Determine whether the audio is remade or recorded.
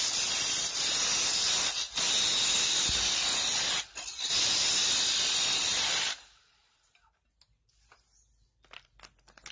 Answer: recorded